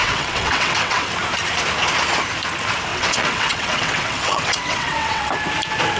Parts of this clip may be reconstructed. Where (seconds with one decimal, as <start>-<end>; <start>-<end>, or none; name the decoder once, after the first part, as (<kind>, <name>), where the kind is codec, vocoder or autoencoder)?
0.0-1.1 (vocoder, WaveNeXt); 2.9-5.3